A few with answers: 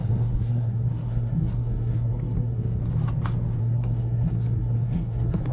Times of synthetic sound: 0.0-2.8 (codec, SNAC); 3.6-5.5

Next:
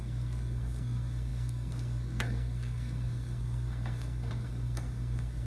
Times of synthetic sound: 0.0-5.5 (codec, SNAC)

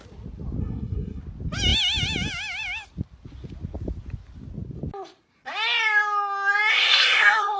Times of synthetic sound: 0.6-1.2 (codec, SNAC); 6.7-7.6

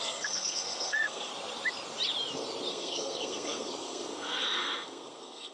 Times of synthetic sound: 0.0-1.3 (codec, SNAC); 2.7-5.5

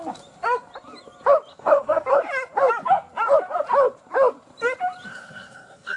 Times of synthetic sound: 1.5-2.2 (codec, SNAC); 5.1-6.0

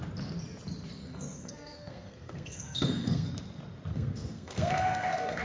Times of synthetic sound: 1.0-3.3 (codec, SNAC); 3.9-5.4

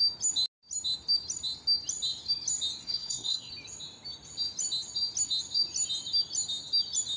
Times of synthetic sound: 2.8-3.5 (codec, SNAC)